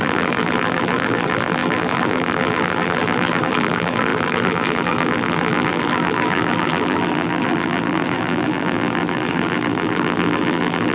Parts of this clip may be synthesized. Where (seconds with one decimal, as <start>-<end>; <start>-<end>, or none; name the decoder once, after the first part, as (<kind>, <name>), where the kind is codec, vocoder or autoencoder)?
0.0-10.9 (vocoder, BigVGAN v2)